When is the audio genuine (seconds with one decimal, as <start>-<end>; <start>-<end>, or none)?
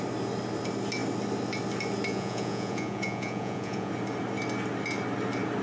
0.0-2.1; 3.9-5.6